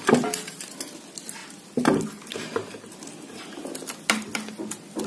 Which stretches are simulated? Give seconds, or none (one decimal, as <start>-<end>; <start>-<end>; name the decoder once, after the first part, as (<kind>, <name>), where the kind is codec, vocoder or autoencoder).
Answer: none